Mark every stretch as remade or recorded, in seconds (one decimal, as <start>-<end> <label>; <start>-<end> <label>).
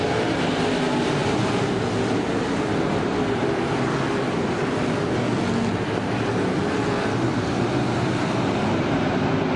0.0-1.2 recorded; 1.2-4.0 remade; 4.0-9.6 recorded